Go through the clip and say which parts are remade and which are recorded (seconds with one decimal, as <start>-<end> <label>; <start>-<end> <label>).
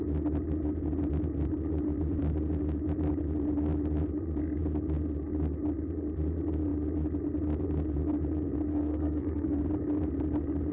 0.0-8.7 recorded; 8.7-9.6 remade; 9.6-10.7 recorded